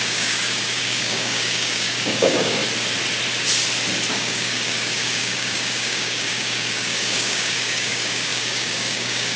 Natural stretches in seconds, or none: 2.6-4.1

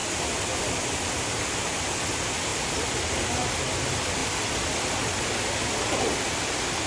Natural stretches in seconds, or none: 1.5-6.9